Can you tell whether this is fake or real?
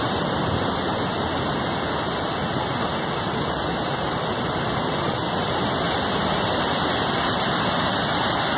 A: real